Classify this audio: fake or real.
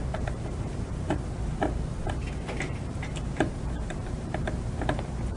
fake